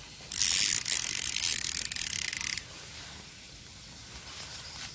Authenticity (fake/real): real